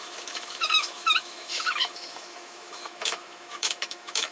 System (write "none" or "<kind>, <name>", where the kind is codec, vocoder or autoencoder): autoencoder, DAC-VAE